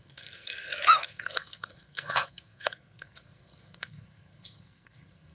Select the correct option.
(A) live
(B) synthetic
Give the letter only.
B